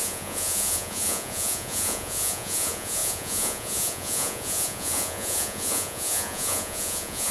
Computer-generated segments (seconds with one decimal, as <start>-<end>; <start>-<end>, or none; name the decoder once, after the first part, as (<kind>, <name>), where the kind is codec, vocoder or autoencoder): 0.0-7.3 (vocoder, Vocos)